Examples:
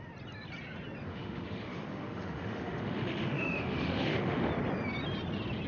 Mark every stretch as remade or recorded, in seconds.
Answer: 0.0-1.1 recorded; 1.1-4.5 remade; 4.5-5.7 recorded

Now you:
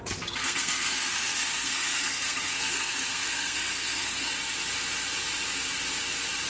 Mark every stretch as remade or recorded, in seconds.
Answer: 0.0-0.4 recorded; 0.4-4.3 remade; 4.3-6.5 recorded

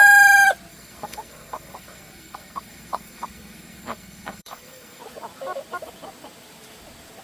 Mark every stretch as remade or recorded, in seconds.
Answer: 0.0-0.7 recorded; 0.7-5.0 remade; 5.0-7.2 recorded

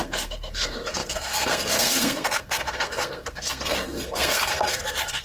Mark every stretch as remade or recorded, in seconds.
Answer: 0.0-5.2 remade

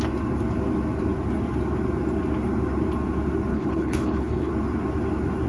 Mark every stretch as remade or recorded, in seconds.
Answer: 0.0-3.5 recorded; 3.5-4.5 remade; 4.5-5.5 recorded

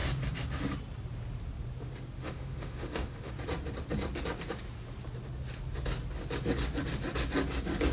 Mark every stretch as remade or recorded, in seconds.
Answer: 0.0-2.2 recorded; 2.2-3.3 remade; 3.3-7.9 recorded

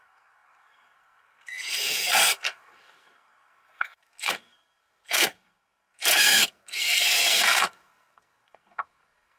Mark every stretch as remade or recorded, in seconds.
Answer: 0.0-9.4 remade